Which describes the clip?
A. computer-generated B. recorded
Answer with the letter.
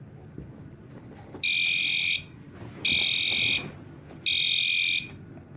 B